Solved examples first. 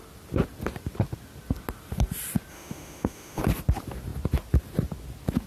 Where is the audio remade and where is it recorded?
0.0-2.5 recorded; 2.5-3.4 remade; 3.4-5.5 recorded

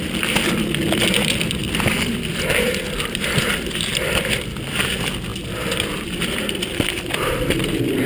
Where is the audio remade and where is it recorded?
0.0-8.1 recorded

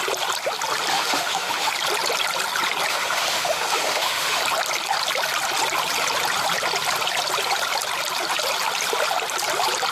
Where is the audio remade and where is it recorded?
0.0-0.9 recorded; 0.9-1.7 remade; 1.7-2.9 recorded; 2.9-4.4 remade; 4.4-9.9 recorded

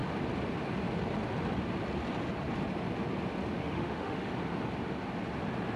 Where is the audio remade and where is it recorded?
0.0-3.5 recorded; 3.5-4.3 remade; 4.3-5.8 recorded

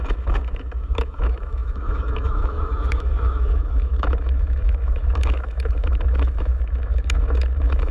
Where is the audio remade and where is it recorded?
0.0-7.9 remade

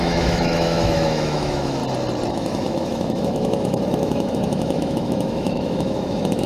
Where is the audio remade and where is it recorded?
0.0-1.8 remade; 1.8-2.3 recorded; 2.3-6.5 remade

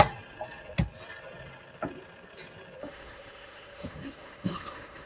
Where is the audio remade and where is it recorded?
0.0-2.8 recorded; 2.8-5.1 remade